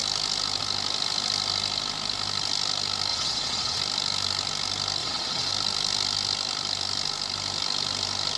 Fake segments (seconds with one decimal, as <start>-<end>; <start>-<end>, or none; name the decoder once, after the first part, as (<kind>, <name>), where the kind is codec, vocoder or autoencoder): 3.1-3.8 (vocoder, Vocos); 5.0-5.5